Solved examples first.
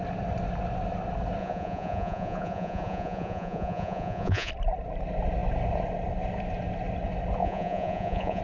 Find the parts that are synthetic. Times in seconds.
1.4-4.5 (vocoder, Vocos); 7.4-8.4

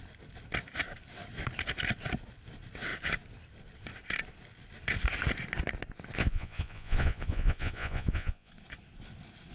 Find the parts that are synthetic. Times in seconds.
6.2-8.5 (vocoder, Vocos)

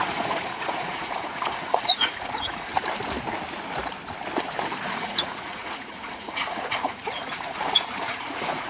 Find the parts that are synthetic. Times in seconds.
0.0-2.7 (vocoder, Vocos); 4.9-8.7

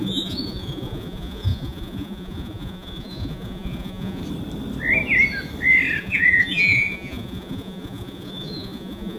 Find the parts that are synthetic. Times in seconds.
0.0-4.2 (vocoder, Vocos); 6.0-9.2

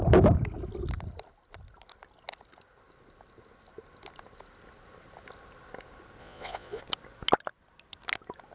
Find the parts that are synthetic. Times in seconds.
6.2-6.8 (vocoder, Vocos)

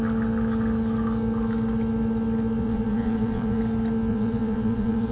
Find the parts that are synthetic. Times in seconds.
2.6-3.6 (vocoder, Vocos); 4.1-5.1

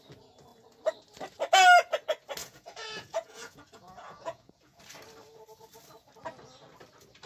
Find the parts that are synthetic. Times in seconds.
2.4-4.8 (vocoder, Vocos)

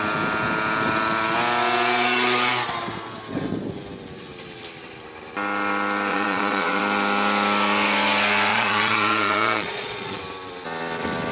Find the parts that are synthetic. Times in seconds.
6.1-6.8 (vocoder, Vocos); 8.5-10.2